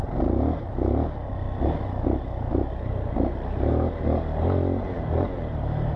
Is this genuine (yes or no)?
yes